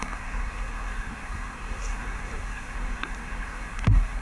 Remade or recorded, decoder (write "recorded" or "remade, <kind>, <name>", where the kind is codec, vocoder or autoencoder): remade, codec, SNAC